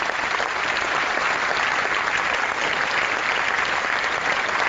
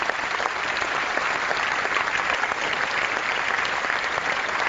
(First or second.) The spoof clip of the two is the second